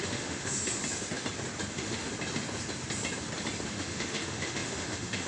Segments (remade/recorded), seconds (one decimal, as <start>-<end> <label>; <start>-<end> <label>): 0.0-0.8 remade; 0.8-1.7 recorded; 1.7-2.1 remade; 2.1-3.7 recorded; 3.7-5.3 remade